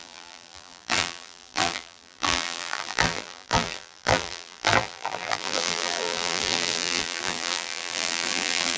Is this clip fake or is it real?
fake